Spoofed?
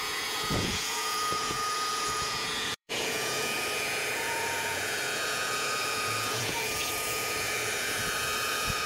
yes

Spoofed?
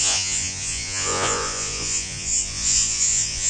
yes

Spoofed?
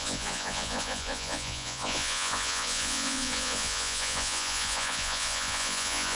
yes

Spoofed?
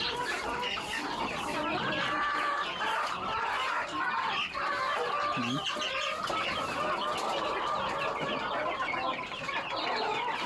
no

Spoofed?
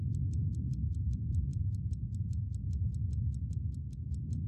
no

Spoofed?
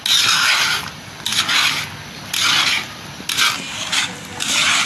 no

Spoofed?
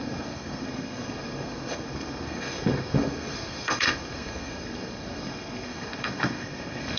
yes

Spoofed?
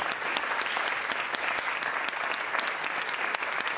no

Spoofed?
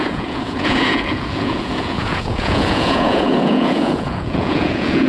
yes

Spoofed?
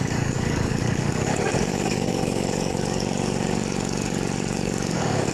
yes